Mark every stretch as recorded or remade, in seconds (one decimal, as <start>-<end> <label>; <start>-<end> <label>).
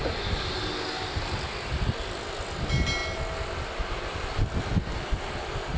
0.0-5.8 recorded